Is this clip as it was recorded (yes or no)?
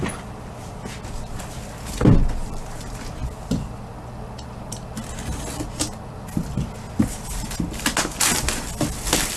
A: yes